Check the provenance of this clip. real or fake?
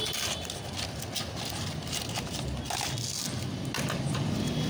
real